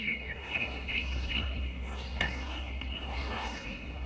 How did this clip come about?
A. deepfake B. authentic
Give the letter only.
A